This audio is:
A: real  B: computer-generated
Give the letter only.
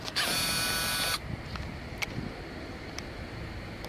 A